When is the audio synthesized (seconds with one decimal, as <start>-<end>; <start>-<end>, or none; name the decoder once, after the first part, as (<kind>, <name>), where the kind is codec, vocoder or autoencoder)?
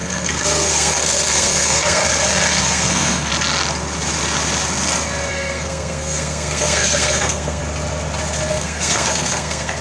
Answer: 0.0-2.0 (codec, SNAC); 2.6-3.3; 5.3-7.6; 8.5-9.8